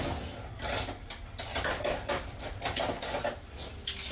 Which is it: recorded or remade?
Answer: recorded